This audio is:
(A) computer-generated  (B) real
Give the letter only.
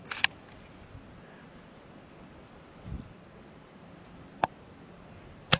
B